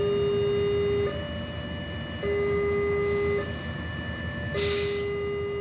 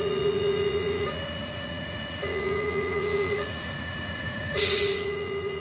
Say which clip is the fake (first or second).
second